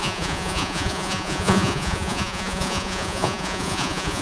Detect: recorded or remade remade